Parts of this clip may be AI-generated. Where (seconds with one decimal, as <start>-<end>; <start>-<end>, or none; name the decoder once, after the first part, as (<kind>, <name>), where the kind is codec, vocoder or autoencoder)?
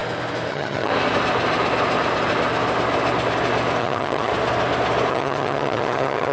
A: 0.5-0.9 (vocoder, HiFi-GAN); 3.8-4.3; 5.1-6.3